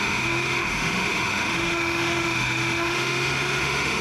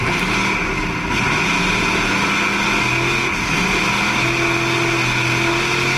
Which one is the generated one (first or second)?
first